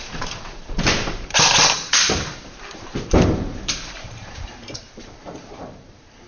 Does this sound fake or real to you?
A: fake